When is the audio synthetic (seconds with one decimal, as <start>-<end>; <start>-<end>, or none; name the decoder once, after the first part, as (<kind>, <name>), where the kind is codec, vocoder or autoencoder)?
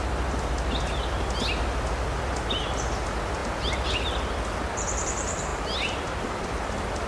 none